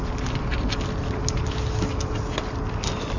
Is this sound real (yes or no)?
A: yes